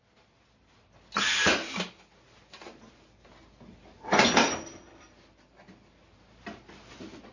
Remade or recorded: recorded